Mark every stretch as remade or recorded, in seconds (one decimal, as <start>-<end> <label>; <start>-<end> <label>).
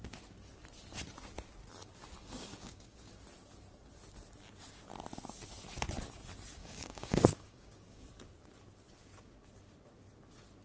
0.0-2.2 recorded; 2.2-3.2 remade; 3.2-6.6 recorded; 6.6-8.1 remade; 8.1-10.6 recorded